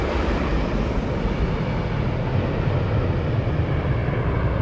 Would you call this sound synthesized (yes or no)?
no